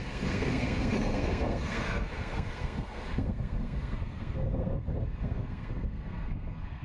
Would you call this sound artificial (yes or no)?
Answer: yes